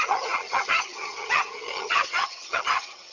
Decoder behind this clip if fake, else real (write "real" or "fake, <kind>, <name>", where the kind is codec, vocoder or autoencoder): fake, vocoder, HiFi-GAN